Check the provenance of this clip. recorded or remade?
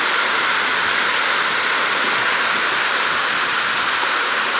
recorded